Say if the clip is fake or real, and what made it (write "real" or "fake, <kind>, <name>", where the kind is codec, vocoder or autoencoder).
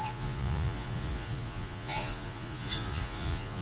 fake, vocoder, Vocos